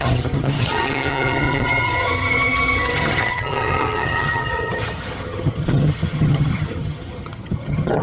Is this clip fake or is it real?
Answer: fake